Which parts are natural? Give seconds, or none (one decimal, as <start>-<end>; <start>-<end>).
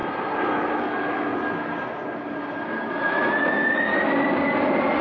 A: 0.0-0.7; 1.3-2.9; 3.9-5.0